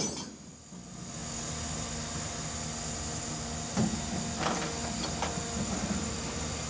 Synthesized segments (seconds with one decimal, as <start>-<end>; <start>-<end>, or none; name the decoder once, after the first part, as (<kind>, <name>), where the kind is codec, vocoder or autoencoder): none